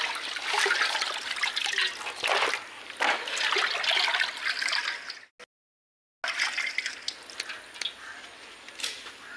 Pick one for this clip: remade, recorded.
recorded